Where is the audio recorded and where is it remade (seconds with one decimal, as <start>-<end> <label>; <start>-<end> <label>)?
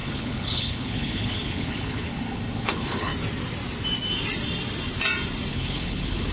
0.0-3.1 remade; 3.1-5.5 recorded; 5.5-6.3 remade